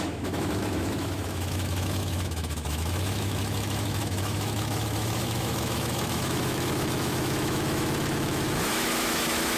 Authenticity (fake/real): fake